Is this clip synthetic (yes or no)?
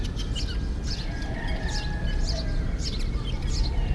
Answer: no